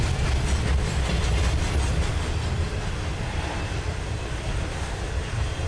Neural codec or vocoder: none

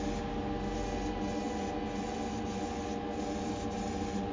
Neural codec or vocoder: none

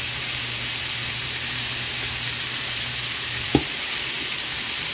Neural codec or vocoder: vocoder, BigVGAN v2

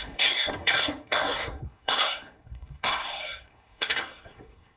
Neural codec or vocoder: codec, SNAC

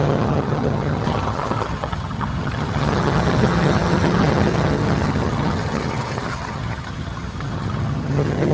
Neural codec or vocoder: vocoder, HiFi-GAN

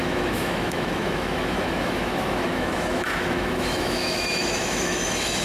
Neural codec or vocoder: autoencoder, DAC-VAE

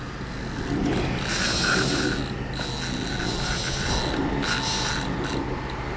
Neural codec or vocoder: none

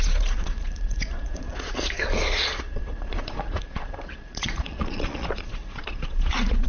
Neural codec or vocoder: vocoder, Vocos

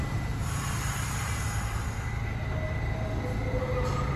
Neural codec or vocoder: none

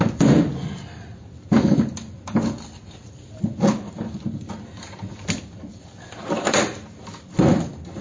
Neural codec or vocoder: none